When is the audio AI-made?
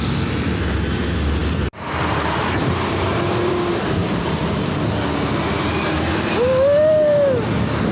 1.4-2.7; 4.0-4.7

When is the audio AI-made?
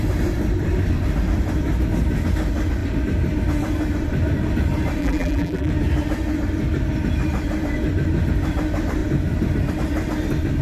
5.0-5.7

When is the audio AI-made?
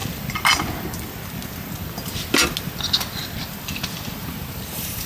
4.2-5.1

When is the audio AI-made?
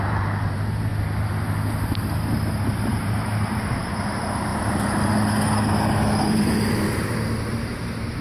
0.0-0.9; 2.9-4.5; 6.3-8.2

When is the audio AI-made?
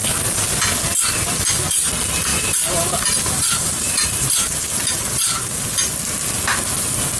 2.3-5.7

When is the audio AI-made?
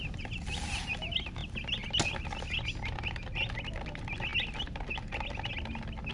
none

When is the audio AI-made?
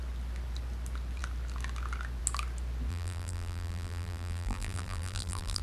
2.9-5.6